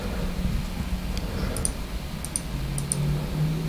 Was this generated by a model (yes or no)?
no